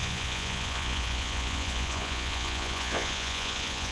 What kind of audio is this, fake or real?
fake